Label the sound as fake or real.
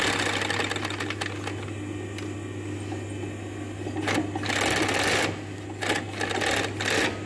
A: real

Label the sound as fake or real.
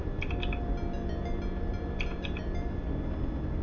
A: real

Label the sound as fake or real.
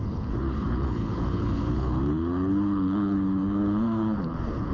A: fake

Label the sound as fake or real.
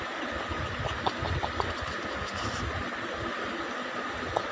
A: real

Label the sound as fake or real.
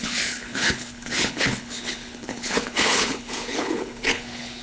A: fake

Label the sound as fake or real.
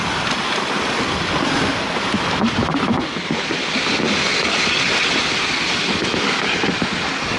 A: real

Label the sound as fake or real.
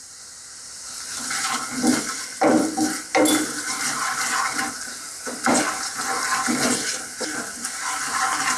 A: real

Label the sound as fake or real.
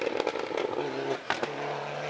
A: real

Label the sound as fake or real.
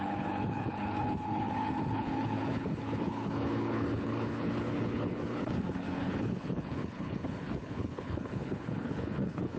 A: fake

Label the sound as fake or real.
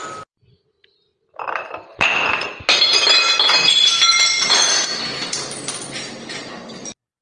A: real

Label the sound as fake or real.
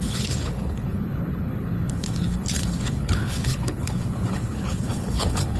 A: fake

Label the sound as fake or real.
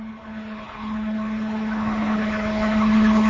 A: fake